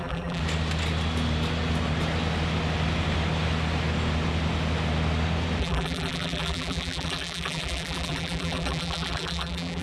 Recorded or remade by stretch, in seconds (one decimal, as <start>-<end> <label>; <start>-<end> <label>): 0.0-0.4 remade; 0.4-5.6 recorded; 5.6-9.8 remade